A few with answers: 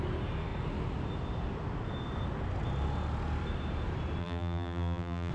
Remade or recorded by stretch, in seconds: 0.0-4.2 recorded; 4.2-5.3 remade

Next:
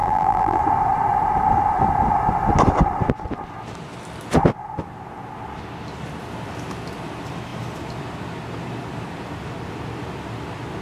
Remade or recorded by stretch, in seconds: 0.0-0.6 remade; 0.6-10.8 recorded

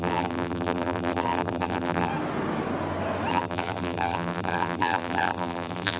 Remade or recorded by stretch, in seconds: 0.0-2.1 remade; 2.1-3.3 recorded; 3.3-6.0 remade